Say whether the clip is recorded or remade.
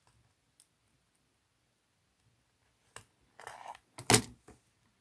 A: recorded